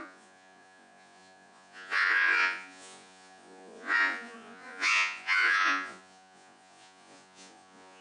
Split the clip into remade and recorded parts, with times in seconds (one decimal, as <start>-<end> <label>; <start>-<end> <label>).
0.0-8.0 remade